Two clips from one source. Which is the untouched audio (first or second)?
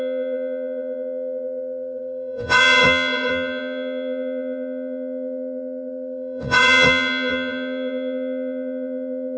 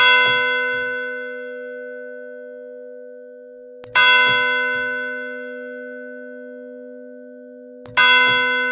second